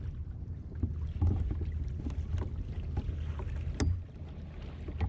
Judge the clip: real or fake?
real